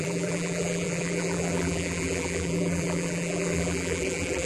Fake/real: fake